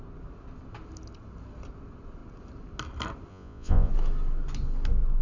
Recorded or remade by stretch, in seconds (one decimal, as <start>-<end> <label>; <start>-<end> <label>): 0.0-3.3 recorded; 3.3-3.9 remade; 3.9-5.2 recorded